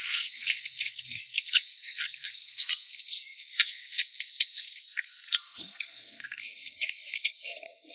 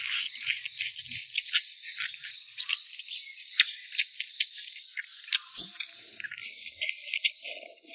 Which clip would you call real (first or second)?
second